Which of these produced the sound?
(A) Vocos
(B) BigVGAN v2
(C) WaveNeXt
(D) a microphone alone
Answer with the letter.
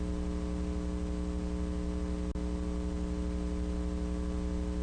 D